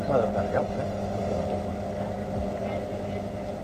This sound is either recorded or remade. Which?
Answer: recorded